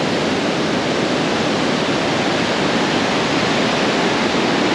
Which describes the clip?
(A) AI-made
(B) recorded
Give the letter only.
B